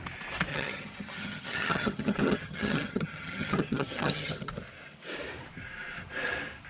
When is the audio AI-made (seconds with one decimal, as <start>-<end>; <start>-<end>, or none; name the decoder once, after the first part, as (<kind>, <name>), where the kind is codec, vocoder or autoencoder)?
0.5-4.5 (vocoder, HiFi-GAN)

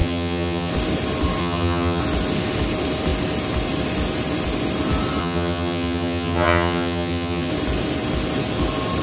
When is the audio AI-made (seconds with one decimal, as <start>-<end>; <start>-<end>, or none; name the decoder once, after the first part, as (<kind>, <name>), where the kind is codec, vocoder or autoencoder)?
0.0-0.7 (vocoder, HiFi-GAN); 1.4-2.0; 5.2-7.5

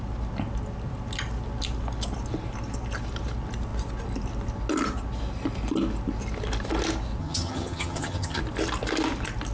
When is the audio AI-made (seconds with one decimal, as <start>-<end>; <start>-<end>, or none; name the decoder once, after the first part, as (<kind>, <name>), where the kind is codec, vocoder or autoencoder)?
7.2-8.4 (vocoder, HiFi-GAN)

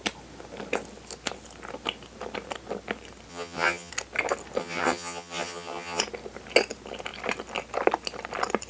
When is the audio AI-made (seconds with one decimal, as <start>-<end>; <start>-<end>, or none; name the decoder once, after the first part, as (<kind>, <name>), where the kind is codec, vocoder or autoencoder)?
3.3-3.9 (vocoder, HiFi-GAN); 4.6-6.0

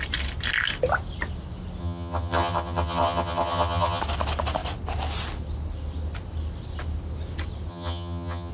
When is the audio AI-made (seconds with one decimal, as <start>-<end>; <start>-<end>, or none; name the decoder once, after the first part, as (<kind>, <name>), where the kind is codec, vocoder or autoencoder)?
1.8-4.0 (vocoder, HiFi-GAN); 7.7-8.5

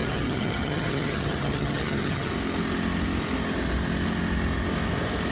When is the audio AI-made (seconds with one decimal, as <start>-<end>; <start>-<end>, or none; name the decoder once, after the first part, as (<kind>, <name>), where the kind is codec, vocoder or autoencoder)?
0.0-2.3 (vocoder, HiFi-GAN)

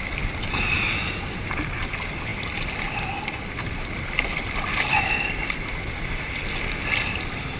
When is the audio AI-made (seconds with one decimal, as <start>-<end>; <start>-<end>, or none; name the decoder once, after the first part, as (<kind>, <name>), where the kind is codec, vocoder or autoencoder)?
none

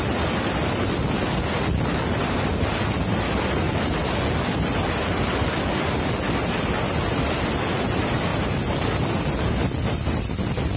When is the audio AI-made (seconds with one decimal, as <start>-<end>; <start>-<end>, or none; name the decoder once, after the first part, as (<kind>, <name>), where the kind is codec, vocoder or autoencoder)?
none